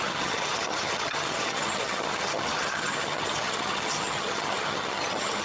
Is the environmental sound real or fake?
fake